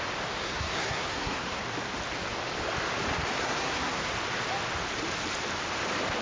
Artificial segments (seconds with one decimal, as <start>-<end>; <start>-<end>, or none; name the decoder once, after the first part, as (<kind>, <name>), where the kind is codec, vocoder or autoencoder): 0.4-1.6 (codec, SNAC); 3.4-4.1